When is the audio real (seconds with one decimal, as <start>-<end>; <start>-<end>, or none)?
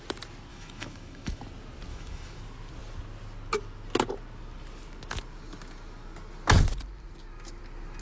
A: 0.0-0.5; 1.4-1.9; 2.4-8.0